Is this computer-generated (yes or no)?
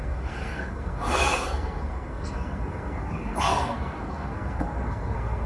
yes